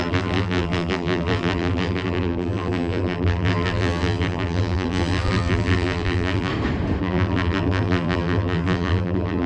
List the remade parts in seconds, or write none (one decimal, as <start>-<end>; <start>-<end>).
0.0-6.5; 7.0-9.5